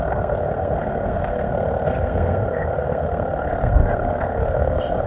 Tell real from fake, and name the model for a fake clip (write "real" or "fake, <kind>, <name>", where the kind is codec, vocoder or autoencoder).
fake, codec, SNAC